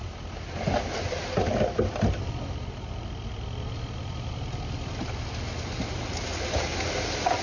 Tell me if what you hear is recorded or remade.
recorded